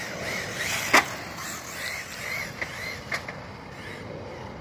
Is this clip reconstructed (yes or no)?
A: no